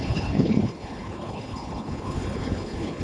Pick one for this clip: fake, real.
fake